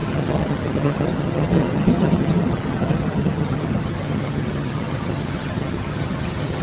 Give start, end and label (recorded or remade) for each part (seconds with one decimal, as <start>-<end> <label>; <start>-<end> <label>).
0.0-6.6 remade